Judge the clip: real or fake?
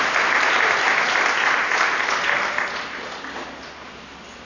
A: real